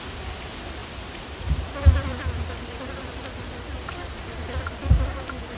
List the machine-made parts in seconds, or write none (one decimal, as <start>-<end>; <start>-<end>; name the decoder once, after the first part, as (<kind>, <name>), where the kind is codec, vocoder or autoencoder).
none